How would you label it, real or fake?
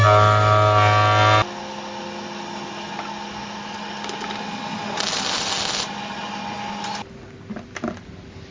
real